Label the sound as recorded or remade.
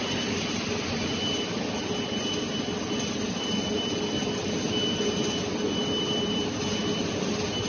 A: recorded